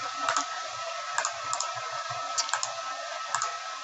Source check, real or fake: real